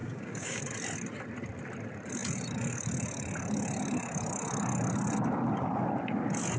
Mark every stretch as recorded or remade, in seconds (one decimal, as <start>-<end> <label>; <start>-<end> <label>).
0.0-0.6 remade; 0.6-6.6 recorded